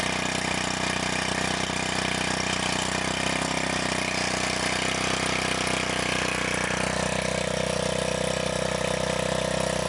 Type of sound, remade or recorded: recorded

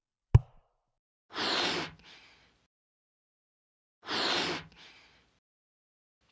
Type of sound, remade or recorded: recorded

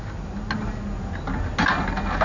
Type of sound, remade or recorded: recorded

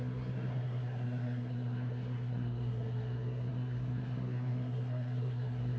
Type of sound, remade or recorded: remade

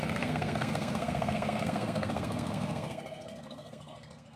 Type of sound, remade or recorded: remade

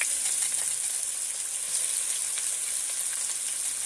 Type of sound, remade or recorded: recorded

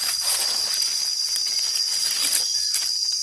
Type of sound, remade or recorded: recorded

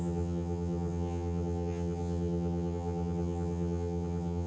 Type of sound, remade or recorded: remade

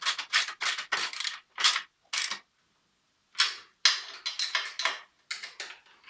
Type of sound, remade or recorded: recorded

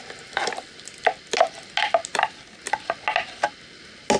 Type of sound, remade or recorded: recorded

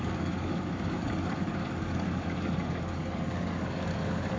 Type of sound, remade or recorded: remade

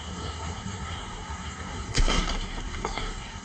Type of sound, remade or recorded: remade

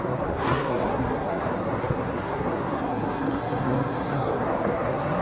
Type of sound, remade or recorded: remade